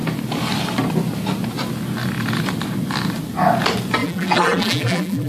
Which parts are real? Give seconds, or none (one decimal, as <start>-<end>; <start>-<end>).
0.0-4.0